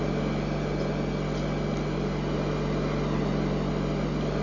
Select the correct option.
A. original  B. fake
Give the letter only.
A